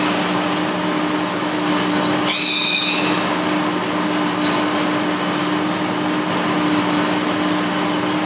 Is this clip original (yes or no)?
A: yes